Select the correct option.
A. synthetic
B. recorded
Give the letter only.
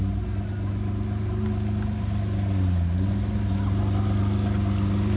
B